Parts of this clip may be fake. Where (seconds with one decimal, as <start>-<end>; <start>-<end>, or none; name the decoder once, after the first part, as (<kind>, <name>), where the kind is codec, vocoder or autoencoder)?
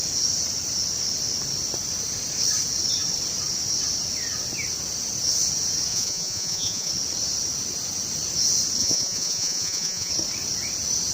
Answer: 5.9-6.9 (vocoder, Vocos); 8.8-10.1